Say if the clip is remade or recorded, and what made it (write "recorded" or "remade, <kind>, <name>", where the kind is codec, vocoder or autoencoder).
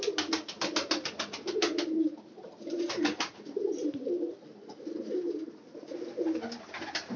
recorded